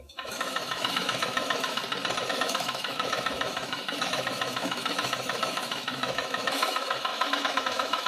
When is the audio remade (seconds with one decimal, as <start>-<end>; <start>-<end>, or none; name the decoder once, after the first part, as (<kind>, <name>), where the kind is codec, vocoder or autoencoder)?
0.0-1.8 (autoencoder, DAC-VAE); 2.3-8.1